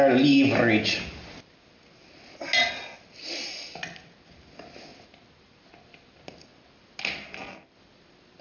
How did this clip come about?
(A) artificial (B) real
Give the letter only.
B